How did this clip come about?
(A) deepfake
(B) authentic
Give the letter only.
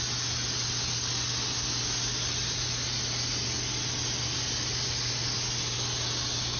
B